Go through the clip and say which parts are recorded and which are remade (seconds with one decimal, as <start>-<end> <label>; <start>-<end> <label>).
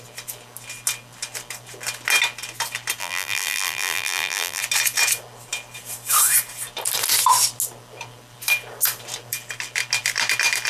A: 0.0-3.0 recorded; 3.0-4.6 remade; 4.6-10.7 recorded